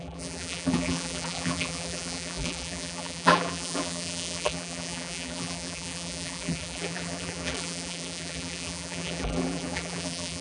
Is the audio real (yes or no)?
no